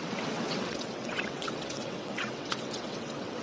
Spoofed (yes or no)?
yes